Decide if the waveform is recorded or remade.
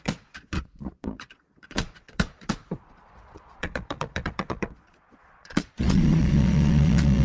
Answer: remade